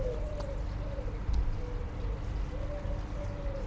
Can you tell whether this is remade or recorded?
recorded